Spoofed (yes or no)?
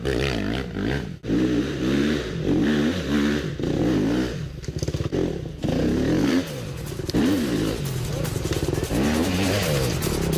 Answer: no